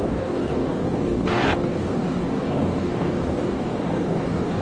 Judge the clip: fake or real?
fake